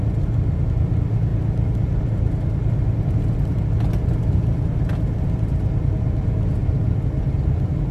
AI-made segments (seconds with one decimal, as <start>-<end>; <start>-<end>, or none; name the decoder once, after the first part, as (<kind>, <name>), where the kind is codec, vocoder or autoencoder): none